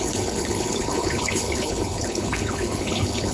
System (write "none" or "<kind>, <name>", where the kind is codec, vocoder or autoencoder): codec, HILCodec